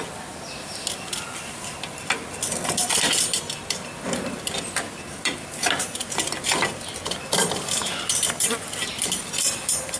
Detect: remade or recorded recorded